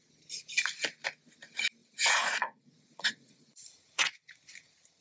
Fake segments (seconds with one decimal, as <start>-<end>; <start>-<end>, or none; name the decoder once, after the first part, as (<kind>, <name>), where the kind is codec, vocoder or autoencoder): 1.8-5.0 (vocoder, Vocos)